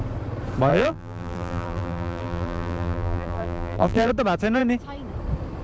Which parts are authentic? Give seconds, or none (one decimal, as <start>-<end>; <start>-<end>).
0.0-0.7; 4.1-5.6